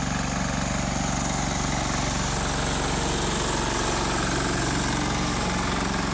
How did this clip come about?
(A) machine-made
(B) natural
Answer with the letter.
B